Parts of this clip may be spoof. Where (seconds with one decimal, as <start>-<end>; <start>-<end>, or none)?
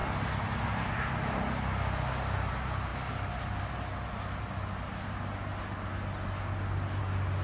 none